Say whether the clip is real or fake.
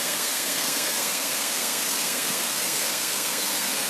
fake